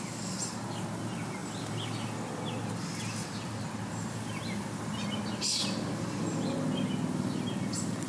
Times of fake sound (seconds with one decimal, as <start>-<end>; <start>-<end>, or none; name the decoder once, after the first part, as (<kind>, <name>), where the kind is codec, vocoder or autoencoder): none